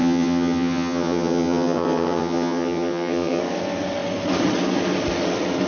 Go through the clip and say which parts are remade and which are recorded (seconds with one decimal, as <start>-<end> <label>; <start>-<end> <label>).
0.0-3.4 remade; 3.4-5.7 recorded